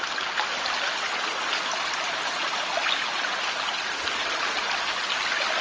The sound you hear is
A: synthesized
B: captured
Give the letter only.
B